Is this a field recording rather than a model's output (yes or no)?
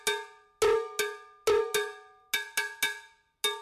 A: yes